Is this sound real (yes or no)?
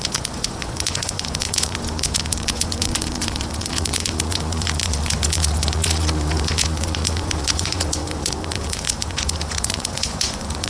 no